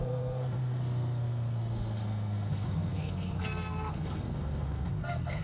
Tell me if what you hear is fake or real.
fake